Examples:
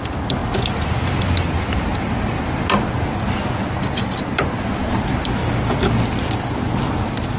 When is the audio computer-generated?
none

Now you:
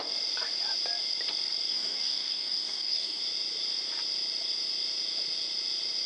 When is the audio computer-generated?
1.7-3.2 (codec, DAC)

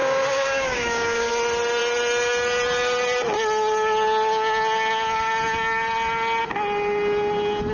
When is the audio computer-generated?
0.0-1.3 (codec, DAC)

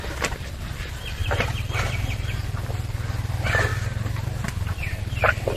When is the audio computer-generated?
none

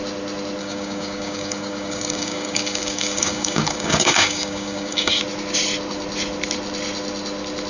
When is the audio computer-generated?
0.6-5.2 (codec, DAC)

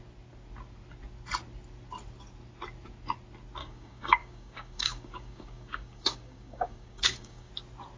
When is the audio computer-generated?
3.6-7.5 (codec, DAC)

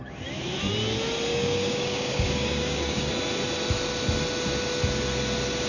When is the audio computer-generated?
1.3-3.1 (codec, DAC)